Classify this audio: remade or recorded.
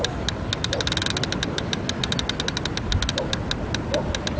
recorded